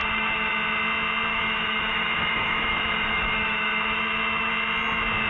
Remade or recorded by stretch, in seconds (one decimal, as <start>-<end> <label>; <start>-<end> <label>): 0.0-0.5 remade; 0.5-1.3 recorded; 1.3-4.5 remade; 4.5-5.3 recorded